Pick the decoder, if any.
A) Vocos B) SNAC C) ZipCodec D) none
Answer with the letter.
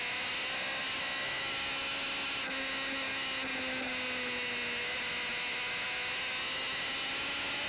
D